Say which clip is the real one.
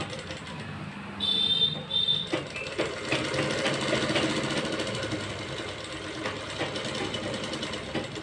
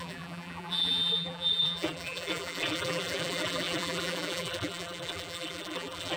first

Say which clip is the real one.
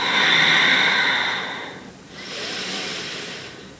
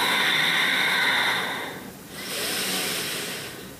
second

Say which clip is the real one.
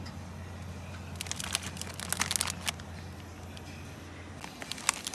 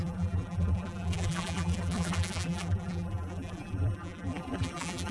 first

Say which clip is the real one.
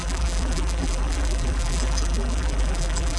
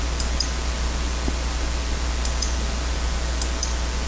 second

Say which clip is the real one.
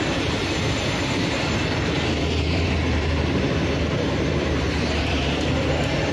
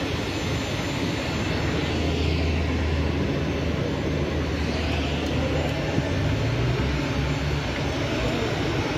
second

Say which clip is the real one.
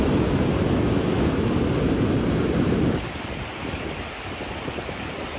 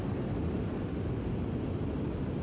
first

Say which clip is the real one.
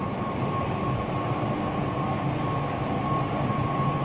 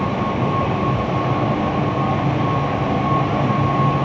second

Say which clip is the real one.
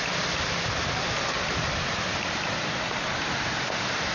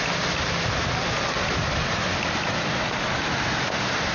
second